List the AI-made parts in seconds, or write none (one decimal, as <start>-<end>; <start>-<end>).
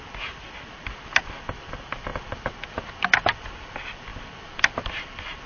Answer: none